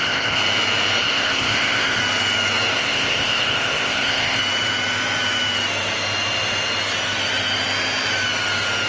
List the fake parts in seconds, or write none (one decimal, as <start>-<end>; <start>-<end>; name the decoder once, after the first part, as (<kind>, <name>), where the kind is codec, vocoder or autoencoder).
0.0-0.4 (codec, ZipCodec); 1.0-2.0; 2.7-4.4